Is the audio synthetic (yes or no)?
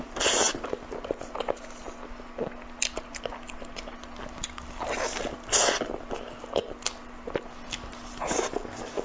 no